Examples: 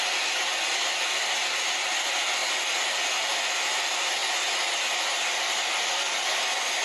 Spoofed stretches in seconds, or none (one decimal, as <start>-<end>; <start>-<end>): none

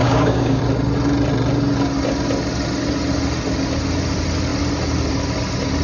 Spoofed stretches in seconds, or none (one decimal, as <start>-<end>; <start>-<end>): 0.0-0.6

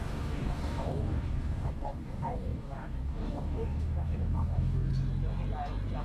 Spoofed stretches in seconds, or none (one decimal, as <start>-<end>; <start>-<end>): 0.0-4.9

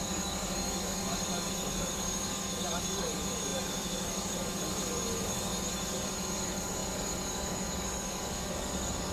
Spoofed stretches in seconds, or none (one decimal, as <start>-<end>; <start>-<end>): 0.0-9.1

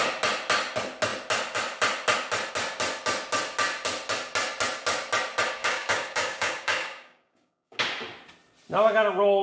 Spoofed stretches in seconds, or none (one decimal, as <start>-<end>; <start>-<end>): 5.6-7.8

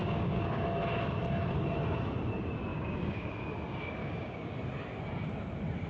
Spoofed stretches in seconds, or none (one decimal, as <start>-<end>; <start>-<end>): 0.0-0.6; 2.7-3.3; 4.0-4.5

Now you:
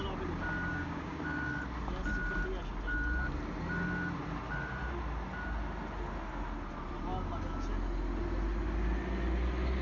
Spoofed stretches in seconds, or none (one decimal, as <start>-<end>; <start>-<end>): 0.7-1.2

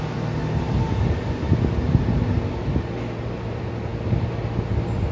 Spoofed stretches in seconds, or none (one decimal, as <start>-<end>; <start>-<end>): none